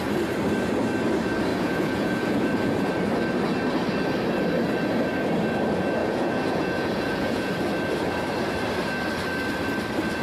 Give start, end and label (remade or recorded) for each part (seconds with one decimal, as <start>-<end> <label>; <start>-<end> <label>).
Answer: 0.0-1.5 recorded; 1.5-2.9 remade; 2.9-6.0 recorded; 6.0-7.5 remade; 7.5-10.2 recorded